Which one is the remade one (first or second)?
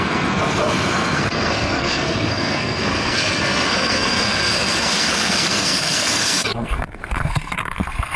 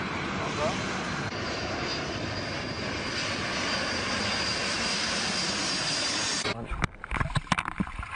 first